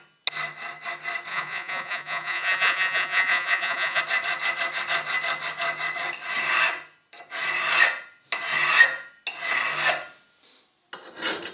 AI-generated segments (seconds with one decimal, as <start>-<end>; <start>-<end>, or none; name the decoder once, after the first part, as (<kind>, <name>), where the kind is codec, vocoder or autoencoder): 1.3-4.0 (vocoder, Vocos)